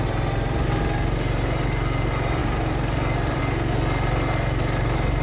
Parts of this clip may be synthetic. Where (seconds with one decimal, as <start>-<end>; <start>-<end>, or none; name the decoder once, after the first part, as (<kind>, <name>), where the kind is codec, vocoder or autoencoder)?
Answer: 2.4-3.4 (vocoder, BigVGAN v2)